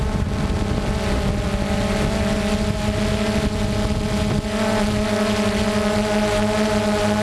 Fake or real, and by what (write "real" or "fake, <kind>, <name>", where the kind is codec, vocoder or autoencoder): real